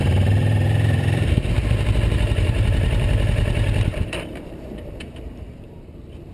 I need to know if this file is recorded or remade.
remade